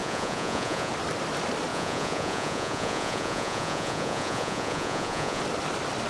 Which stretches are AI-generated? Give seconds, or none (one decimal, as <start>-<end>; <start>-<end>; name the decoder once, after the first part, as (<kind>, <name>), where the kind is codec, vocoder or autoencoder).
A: 0.0-0.9 (vocoder, Vocos); 1.7-5.4